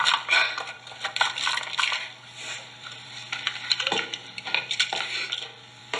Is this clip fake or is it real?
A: fake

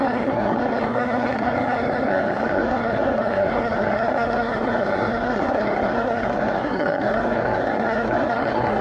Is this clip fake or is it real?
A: fake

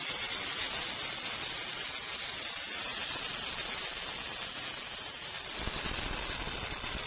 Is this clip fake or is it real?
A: real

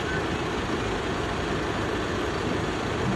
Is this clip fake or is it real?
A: real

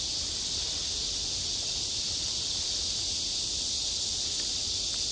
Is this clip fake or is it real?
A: real